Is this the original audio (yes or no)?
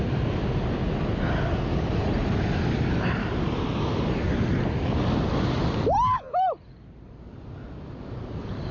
yes